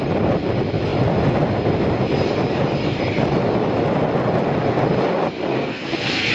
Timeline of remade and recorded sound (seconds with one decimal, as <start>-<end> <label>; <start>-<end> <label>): 0.0-5.5 recorded; 5.5-6.3 remade